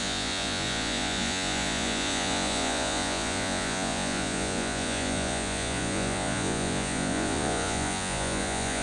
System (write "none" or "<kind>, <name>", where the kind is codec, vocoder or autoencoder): vocoder, Vocos